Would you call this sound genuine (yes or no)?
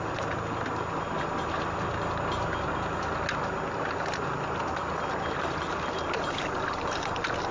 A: yes